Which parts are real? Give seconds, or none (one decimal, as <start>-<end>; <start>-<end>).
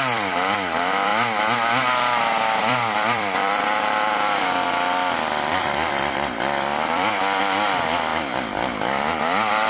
1.1-2.6; 8.1-9.2